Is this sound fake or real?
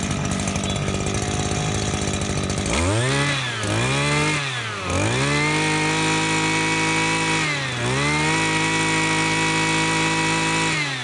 real